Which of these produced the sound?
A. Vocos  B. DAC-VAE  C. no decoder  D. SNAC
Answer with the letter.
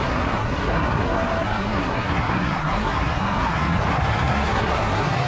D